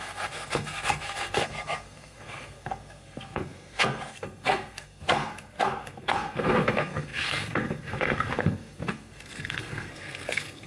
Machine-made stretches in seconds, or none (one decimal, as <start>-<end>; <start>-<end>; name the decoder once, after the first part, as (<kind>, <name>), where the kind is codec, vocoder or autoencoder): 0.0-10.7 (codec, SNAC)